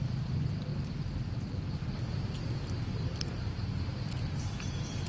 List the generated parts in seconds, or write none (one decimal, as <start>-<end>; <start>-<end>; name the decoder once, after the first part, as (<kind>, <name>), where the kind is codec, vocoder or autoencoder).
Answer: 0.7-1.8 (vocoder, BigVGAN v2); 2.9-3.5